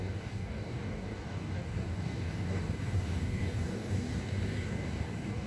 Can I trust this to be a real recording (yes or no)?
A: no